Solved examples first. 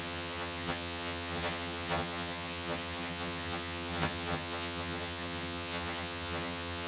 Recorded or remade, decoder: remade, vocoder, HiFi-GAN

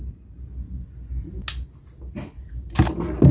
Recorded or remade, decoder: recorded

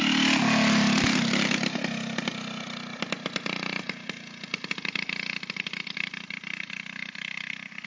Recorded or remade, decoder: recorded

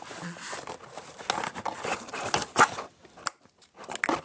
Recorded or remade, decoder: recorded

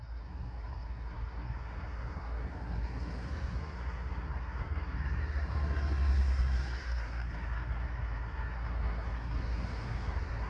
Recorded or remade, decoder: remade, codec, SNAC